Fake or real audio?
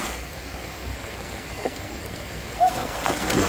fake